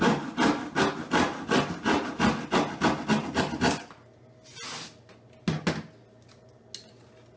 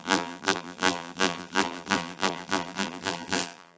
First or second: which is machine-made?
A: second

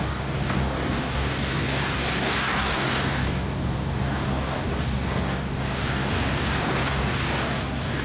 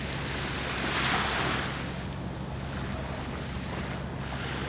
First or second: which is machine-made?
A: first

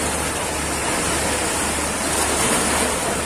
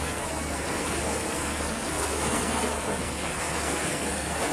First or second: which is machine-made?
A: second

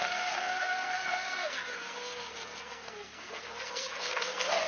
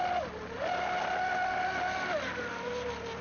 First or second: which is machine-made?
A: first